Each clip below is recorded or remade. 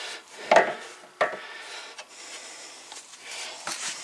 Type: recorded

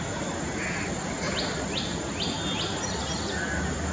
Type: recorded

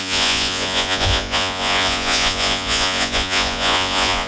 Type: remade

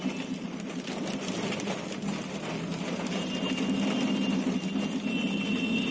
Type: recorded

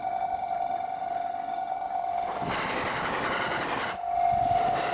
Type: recorded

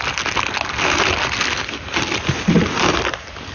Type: recorded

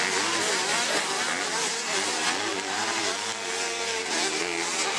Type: recorded